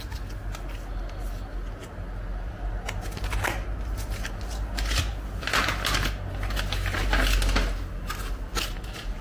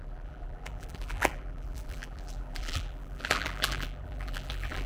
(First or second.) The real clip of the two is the first